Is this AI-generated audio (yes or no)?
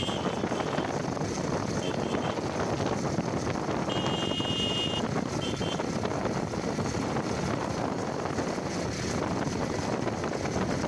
no